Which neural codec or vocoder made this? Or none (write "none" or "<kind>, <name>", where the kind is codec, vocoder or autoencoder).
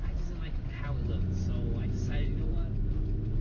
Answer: none